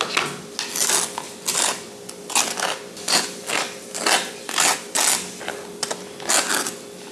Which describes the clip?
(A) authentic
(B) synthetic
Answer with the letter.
A